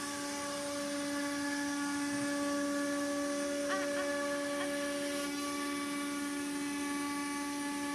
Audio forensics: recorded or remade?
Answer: recorded